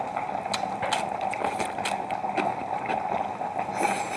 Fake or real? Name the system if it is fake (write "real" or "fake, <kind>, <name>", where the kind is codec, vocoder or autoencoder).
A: real